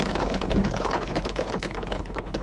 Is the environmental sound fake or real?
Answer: fake